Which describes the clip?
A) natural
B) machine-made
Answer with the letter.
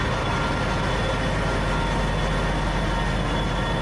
A